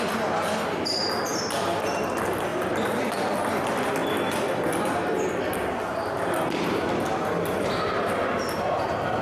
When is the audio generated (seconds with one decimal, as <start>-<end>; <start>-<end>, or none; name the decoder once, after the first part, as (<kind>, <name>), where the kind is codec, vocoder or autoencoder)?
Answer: 2.5-3.1 (vocoder, BigVGAN v2)